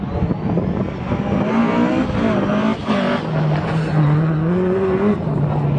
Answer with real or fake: real